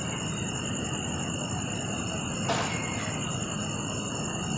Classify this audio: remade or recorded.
recorded